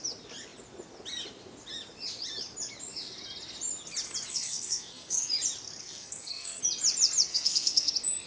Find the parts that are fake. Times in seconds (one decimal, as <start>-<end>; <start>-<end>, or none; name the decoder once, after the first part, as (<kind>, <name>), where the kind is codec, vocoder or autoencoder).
4.3-5.3 (codec, SNAC); 5.8-6.6; 7.3-7.9